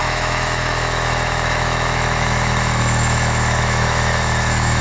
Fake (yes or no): yes